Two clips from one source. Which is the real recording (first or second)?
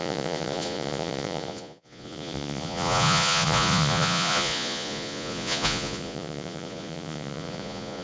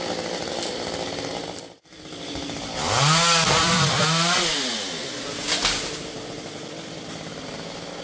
second